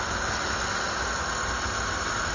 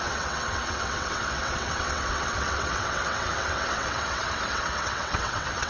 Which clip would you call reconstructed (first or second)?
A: second